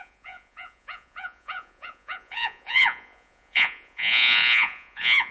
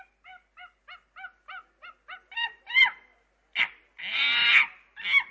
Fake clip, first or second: first